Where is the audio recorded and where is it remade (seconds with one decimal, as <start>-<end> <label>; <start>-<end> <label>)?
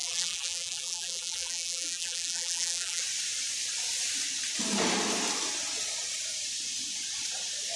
0.0-3.0 remade; 3.0-7.8 recorded